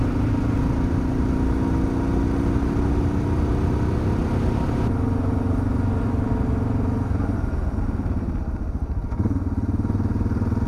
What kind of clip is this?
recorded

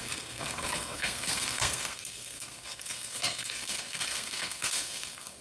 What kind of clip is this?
remade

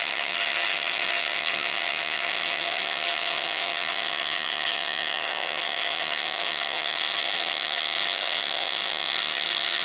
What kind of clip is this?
remade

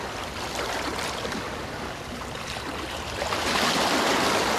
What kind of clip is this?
recorded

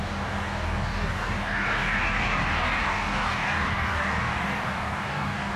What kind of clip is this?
remade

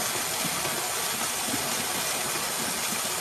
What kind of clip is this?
recorded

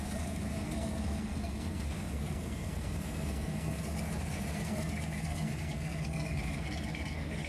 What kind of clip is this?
remade